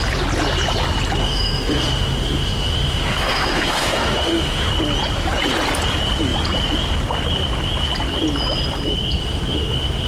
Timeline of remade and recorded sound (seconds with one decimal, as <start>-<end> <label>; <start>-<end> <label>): 0.0-1.2 recorded; 1.2-4.7 remade; 4.7-9.2 recorded; 9.2-10.1 remade